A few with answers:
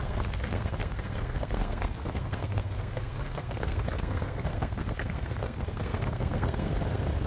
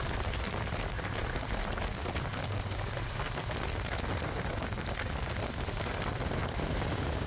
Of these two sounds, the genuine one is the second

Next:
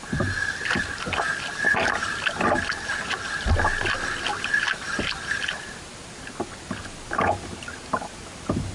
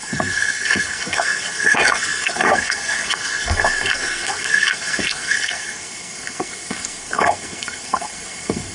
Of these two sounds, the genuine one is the first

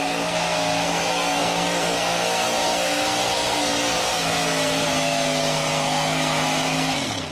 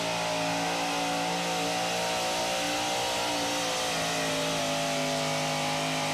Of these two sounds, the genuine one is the second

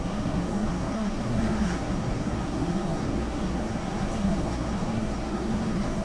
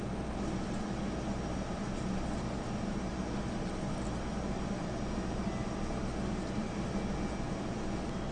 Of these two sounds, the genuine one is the second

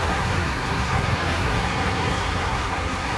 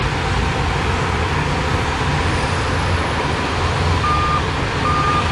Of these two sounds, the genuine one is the second